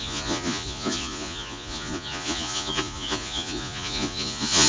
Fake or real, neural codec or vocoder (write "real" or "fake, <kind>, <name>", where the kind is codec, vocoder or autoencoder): fake, vocoder, Vocos